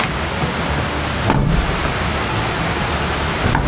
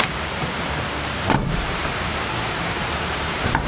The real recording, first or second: first